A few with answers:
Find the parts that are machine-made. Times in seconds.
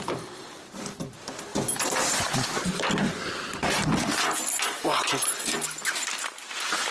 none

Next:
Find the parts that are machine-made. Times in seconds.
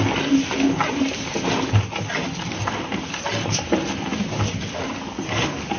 none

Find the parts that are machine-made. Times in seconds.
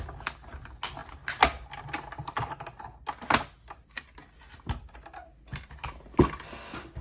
none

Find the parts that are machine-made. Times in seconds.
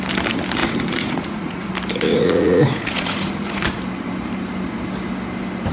0.6-1.7; 2.1-3.8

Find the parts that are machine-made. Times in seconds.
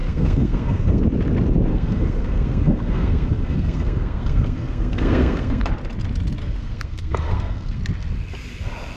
0.0-1.0; 1.7-5.7; 6.4-7.8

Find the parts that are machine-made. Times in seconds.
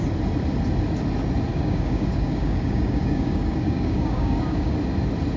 1.5-4.7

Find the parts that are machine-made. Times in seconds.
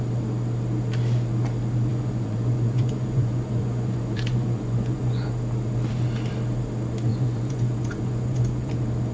1.9-5.3; 7.1-8.7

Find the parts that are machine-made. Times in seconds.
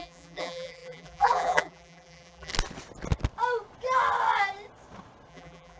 0.0-2.5; 5.3-5.8